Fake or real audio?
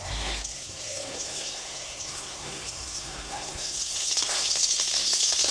fake